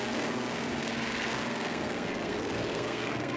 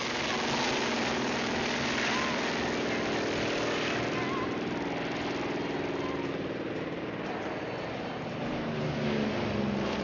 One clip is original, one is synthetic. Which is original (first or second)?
second